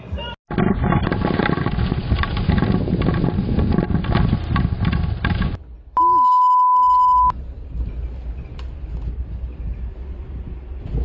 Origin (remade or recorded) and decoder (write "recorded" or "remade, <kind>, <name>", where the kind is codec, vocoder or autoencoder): recorded